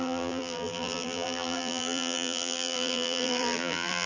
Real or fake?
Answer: fake